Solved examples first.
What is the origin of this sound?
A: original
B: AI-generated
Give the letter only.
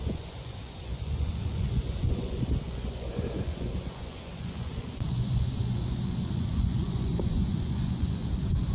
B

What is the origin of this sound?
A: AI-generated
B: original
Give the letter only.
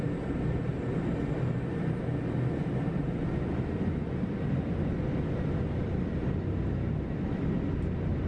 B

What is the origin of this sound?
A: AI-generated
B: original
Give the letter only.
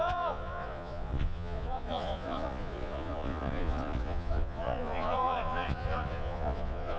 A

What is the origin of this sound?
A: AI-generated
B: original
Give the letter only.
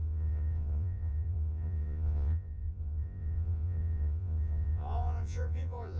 A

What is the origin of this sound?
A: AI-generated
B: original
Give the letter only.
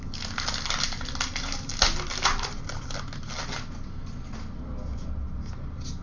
B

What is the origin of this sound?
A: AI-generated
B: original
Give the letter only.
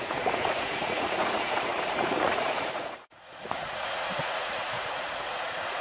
A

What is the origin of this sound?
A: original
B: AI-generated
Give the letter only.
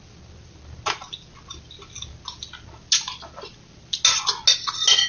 A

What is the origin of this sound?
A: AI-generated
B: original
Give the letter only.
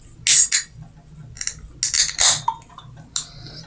B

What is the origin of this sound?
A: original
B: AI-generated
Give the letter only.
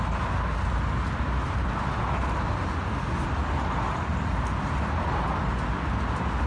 A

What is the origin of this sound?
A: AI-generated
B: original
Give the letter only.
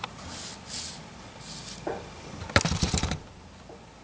B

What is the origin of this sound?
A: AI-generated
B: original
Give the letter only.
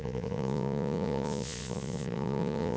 A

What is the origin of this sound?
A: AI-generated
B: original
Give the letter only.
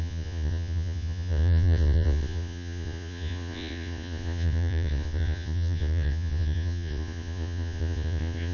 A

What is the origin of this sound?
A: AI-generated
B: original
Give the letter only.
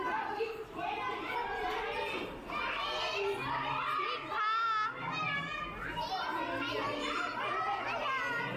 B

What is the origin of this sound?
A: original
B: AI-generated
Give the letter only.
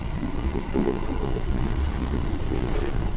B